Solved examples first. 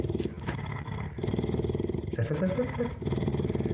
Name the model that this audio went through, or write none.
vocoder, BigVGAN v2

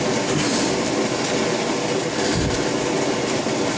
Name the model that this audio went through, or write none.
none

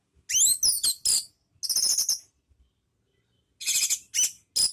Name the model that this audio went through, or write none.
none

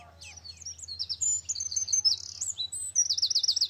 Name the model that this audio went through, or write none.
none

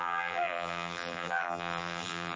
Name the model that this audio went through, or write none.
vocoder, BigVGAN v2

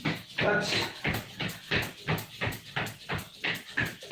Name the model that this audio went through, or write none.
none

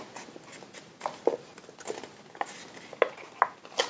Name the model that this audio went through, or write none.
none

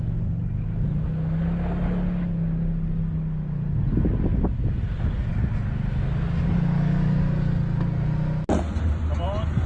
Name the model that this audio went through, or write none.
none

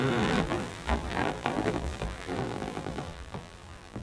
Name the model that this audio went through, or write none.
vocoder, BigVGAN v2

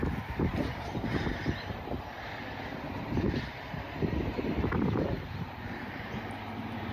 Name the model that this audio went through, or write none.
vocoder, BigVGAN v2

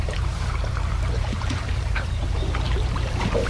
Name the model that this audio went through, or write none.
vocoder, BigVGAN v2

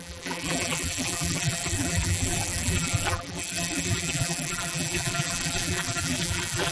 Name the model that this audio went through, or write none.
vocoder, BigVGAN v2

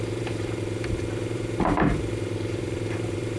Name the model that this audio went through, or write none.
vocoder, BigVGAN v2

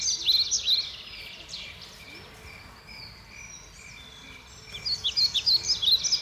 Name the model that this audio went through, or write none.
none